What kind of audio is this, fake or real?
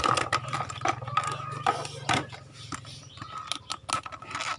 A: real